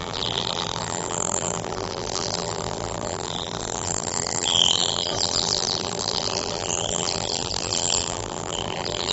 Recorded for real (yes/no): no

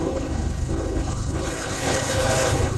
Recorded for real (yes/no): no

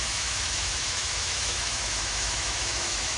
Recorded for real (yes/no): no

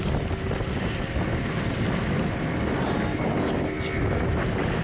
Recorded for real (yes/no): yes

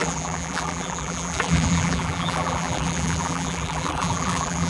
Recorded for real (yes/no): no